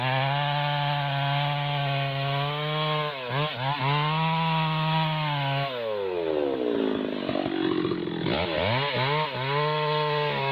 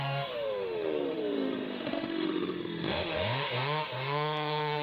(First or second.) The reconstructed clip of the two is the second